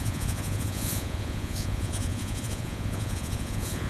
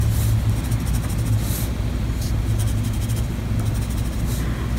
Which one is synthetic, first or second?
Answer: first